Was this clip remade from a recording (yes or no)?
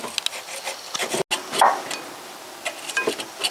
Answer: no